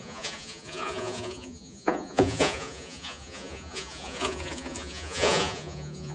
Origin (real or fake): fake